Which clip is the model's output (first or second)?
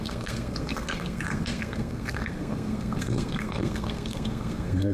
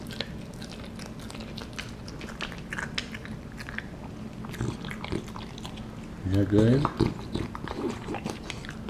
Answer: first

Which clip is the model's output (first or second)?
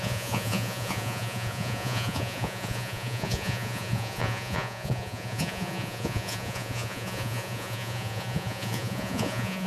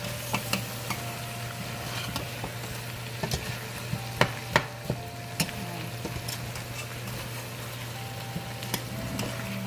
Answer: first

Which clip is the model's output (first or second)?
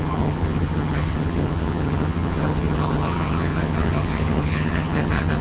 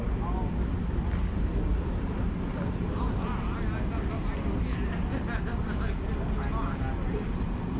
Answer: first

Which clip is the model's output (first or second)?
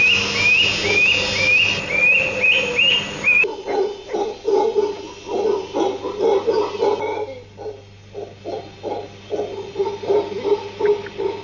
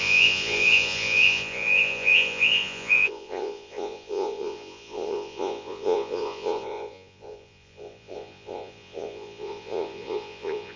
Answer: second